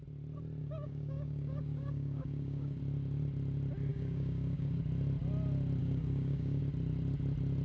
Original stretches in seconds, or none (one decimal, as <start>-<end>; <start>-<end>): 0.0-0.6; 2.8-3.9; 4.8-5.8; 6.6-7.6